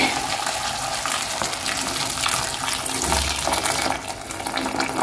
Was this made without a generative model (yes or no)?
yes